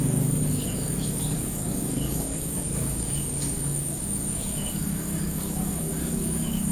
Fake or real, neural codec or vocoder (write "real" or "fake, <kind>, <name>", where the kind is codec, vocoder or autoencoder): fake, codec, DAC